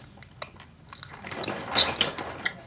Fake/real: real